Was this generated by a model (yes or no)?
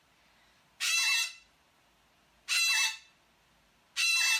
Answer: no